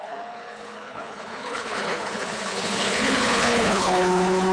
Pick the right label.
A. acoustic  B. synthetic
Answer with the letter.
B